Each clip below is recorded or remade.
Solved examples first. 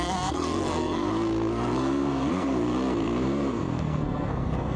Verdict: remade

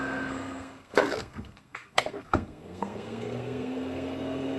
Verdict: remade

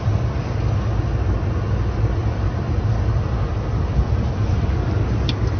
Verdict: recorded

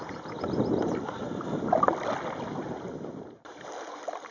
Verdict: recorded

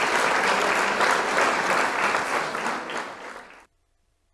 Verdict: recorded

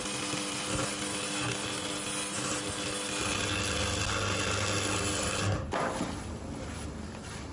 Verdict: recorded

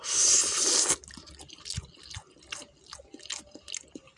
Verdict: recorded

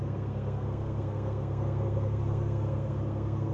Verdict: remade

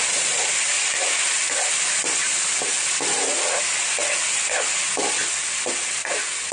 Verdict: recorded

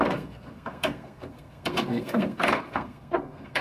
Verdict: remade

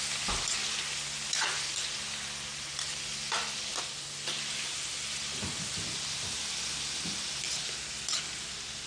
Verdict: recorded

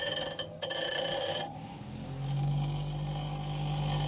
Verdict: recorded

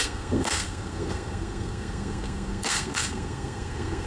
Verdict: remade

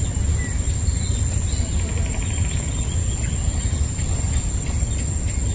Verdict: recorded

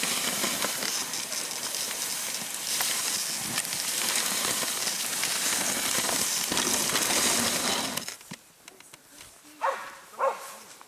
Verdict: recorded